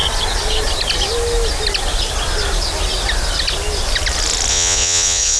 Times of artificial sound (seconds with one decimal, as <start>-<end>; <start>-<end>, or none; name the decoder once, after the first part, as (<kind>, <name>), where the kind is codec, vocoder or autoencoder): 4.5-5.4 (vocoder, Vocos)